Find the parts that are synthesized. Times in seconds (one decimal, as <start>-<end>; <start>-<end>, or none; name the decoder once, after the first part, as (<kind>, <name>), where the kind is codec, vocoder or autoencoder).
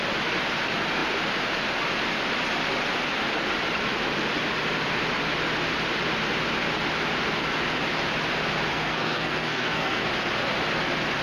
8.7-10.1 (codec, SNAC)